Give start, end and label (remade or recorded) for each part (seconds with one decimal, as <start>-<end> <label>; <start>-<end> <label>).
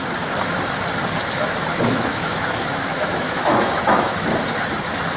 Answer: 0.0-1.7 recorded; 1.7-4.3 remade; 4.3-5.2 recorded